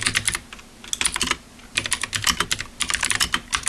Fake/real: real